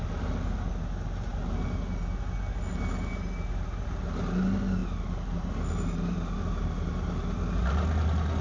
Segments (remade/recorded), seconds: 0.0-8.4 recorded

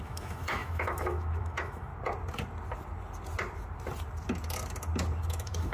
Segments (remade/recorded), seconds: 0.0-1.9 remade; 1.9-5.3 recorded; 5.3-5.7 remade

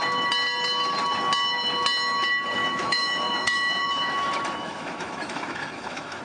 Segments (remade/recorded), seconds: 0.0-2.6 recorded; 2.6-6.2 remade